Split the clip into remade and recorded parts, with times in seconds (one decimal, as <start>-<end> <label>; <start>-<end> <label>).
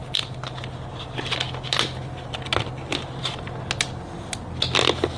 0.0-5.2 recorded